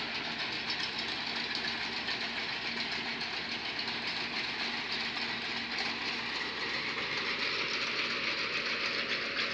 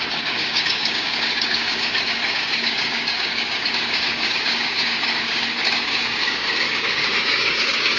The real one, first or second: first